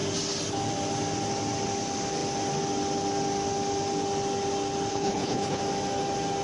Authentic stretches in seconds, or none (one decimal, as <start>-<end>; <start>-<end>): 0.0-4.9; 5.6-6.4